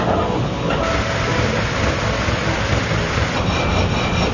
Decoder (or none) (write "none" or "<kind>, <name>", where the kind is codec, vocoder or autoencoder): none